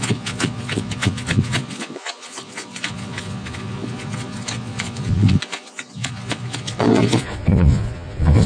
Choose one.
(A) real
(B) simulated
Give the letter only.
B